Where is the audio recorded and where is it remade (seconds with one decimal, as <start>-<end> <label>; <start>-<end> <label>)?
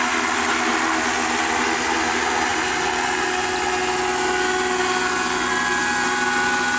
0.0-6.8 recorded